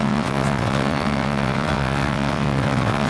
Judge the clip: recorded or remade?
remade